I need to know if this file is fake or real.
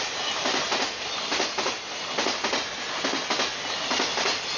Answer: real